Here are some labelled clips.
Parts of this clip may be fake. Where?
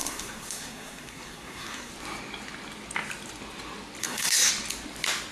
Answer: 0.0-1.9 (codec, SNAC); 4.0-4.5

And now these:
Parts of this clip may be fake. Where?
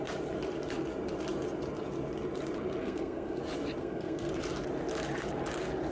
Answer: 2.8-3.4 (codec, SNAC); 3.8-4.3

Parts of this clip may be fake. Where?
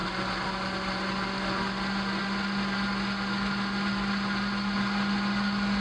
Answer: none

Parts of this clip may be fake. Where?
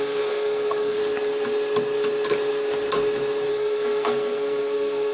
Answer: 0.0-1.0 (codec, SNAC); 3.5-5.1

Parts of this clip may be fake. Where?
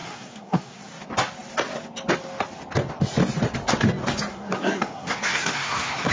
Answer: 0.0-0.8 (codec, SNAC); 4.3-6.1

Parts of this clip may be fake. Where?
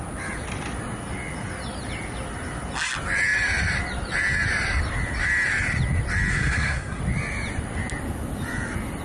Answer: 6.3-7.0 (codec, SNAC)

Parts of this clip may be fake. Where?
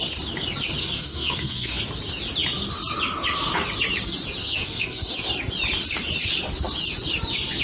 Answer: 0.8-1.8 (codec, SNAC); 4.4-5.1